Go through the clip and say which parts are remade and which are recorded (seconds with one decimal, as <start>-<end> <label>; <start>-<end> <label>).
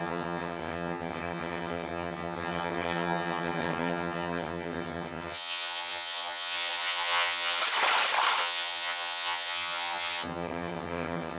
0.0-7.6 remade; 7.6-8.4 recorded; 8.4-11.4 remade